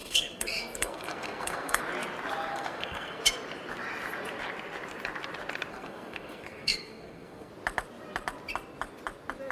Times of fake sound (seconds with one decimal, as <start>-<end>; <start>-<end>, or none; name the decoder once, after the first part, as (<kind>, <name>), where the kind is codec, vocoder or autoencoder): 0.0-1.8 (codec, SNAC); 2.5-3.2; 5.7-7.5